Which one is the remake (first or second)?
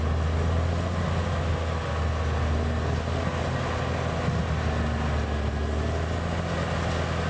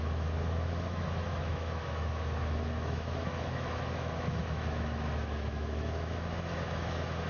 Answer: second